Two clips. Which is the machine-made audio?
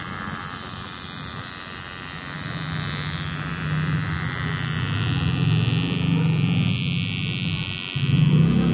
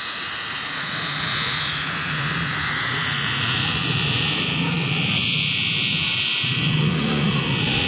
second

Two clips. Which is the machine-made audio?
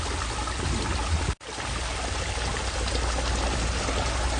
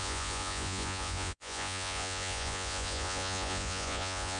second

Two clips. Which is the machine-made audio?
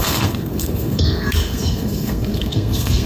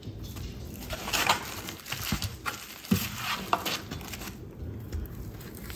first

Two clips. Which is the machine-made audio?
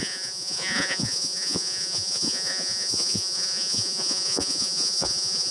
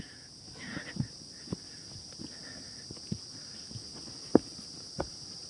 first